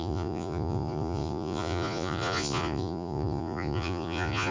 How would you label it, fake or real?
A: fake